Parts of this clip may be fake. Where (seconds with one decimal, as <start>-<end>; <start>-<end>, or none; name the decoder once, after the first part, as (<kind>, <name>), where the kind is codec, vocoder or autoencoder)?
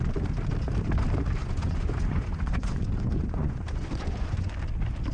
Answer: 1.4-4.5 (vocoder, Vocos)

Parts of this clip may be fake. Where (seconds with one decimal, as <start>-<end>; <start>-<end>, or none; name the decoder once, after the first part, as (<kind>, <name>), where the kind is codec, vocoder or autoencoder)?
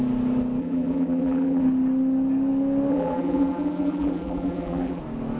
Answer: 0.6-1.6 (vocoder, BigVGAN v2); 2.9-5.0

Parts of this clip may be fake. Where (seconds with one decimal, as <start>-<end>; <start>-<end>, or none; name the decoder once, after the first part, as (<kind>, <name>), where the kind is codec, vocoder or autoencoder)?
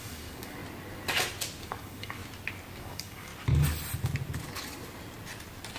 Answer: 0.0-0.6 (codec, DAC); 1.6-2.2; 2.8-3.3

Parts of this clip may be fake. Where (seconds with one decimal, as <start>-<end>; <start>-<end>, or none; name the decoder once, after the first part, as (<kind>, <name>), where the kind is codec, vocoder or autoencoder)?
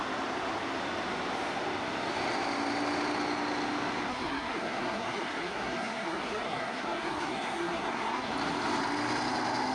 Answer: 4.1-8.3 (codec, SNAC)